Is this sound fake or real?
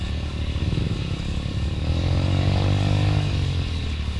fake